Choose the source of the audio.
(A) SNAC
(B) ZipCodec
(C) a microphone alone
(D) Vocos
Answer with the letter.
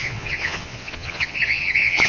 D